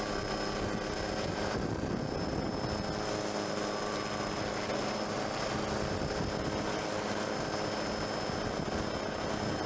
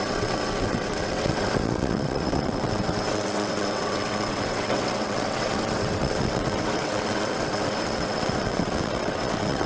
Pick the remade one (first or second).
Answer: second